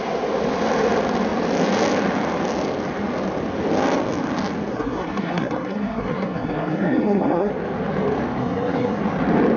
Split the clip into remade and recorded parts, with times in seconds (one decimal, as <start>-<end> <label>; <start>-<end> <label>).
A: 0.0-4.7 recorded; 4.7-7.5 remade; 7.5-8.4 recorded; 8.4-9.0 remade; 9.0-9.6 recorded